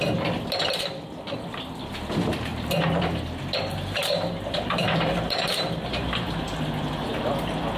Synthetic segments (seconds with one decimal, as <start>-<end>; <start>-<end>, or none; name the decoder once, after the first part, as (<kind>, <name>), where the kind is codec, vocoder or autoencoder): 2.5-3.2 (vocoder, BigVGAN v2); 3.7-7.3